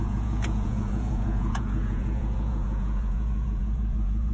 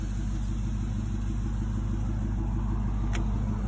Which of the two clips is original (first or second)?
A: second